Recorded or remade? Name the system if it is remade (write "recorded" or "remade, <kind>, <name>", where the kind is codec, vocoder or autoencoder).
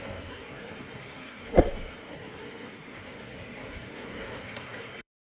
remade, codec, SNAC